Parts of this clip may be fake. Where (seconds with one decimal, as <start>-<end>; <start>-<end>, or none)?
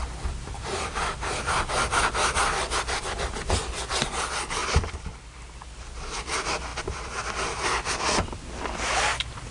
none